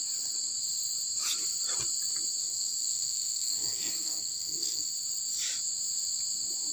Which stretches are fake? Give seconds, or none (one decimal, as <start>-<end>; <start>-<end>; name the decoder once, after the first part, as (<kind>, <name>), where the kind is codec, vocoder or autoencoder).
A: 2.4-4.9 (codec, SNAC)

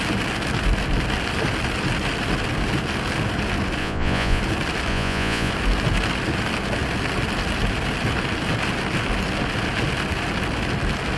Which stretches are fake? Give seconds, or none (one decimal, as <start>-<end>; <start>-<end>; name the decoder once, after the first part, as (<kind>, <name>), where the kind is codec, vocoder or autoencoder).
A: 3.8-4.4 (vocoder, Vocos); 4.9-5.5

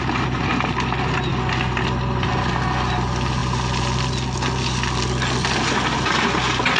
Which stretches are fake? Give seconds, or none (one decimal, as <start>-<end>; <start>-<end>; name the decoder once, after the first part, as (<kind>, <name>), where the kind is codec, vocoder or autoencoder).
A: none

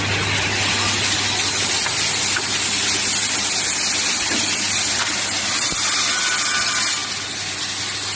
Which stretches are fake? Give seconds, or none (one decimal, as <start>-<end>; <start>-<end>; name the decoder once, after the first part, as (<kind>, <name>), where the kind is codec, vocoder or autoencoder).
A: none

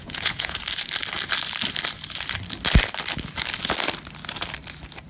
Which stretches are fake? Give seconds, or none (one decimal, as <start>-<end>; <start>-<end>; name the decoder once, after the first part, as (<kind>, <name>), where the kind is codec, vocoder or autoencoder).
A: 0.0-0.6 (vocoder, Vocos)

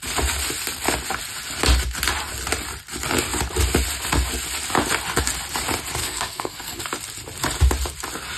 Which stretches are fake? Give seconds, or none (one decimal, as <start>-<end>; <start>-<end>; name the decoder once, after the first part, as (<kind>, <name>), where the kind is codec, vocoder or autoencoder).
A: 6.0-6.8 (codec, SNAC)

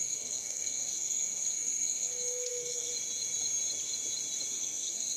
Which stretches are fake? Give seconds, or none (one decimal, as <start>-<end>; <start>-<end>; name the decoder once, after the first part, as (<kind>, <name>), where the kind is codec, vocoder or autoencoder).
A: 0.0-2.9 (codec, SNAC); 4.5-5.2